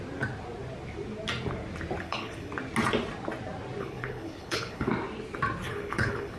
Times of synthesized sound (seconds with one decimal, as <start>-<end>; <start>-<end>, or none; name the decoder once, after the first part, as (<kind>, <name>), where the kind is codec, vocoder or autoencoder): 2.0-2.5 (codec, HILCodec); 3.8-4.9; 5.7-6.4